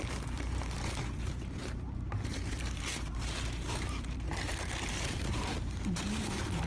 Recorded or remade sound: remade